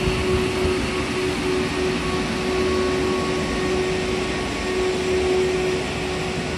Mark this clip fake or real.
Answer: real